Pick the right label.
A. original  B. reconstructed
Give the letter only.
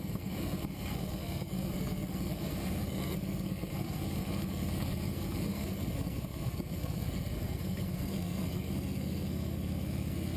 B